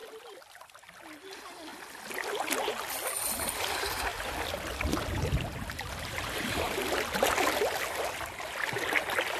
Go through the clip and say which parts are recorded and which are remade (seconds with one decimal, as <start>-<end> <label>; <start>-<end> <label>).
0.0-1.0 remade; 1.0-4.1 recorded; 4.1-6.5 remade; 6.5-9.4 recorded